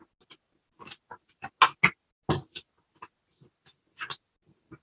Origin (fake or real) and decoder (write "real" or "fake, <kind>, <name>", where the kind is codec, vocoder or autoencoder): real